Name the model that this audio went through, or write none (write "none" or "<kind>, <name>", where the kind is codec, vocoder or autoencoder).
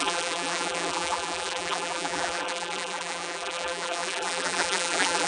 vocoder, BigVGAN v2